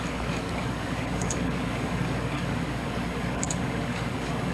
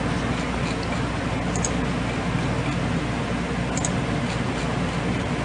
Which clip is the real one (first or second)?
second